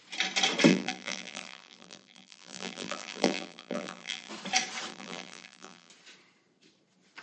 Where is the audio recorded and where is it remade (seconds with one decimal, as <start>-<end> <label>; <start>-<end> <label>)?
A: 0.0-0.7 recorded; 0.7-4.3 remade; 4.3-4.9 recorded; 4.9-5.9 remade; 5.9-7.2 recorded